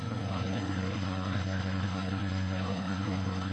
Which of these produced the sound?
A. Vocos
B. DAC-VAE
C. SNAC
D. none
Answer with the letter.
C